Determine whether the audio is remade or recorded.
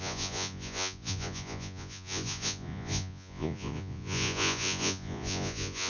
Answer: remade